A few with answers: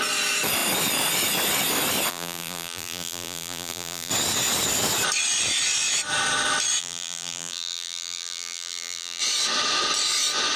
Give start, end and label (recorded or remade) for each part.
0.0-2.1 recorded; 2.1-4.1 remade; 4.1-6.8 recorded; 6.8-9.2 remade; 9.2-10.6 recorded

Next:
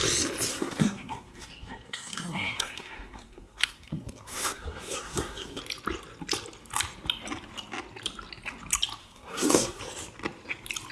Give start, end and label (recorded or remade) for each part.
0.0-0.5 recorded; 0.5-5.6 remade; 5.6-9.0 recorded; 9.0-9.8 remade; 9.8-10.9 recorded

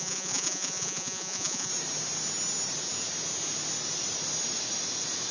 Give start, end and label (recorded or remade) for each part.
0.0-1.7 remade; 1.7-5.3 recorded

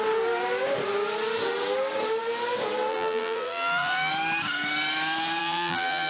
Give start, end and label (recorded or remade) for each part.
0.0-2.9 recorded; 2.9-4.1 remade; 4.1-5.4 recorded; 5.4-6.1 remade

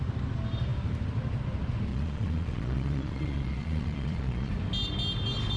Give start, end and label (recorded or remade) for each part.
0.0-1.9 recorded; 1.9-4.5 remade; 4.5-5.6 recorded

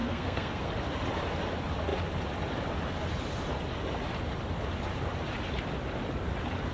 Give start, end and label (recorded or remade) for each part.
0.0-0.7 remade; 0.7-6.7 recorded

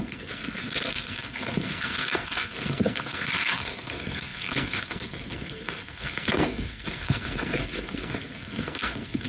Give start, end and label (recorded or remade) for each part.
0.0-9.3 remade